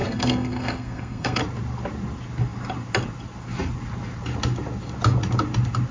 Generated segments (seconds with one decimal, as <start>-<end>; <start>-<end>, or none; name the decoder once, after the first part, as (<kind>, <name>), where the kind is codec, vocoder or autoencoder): 0.0-1.4 (codec, SNAC)